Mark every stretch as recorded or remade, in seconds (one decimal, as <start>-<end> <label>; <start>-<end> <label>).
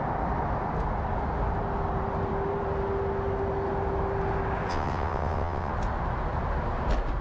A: 0.0-4.7 recorded; 4.7-5.7 remade; 5.7-7.2 recorded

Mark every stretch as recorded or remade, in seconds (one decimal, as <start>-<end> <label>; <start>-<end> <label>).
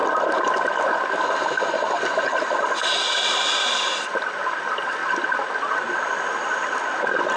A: 0.0-7.4 recorded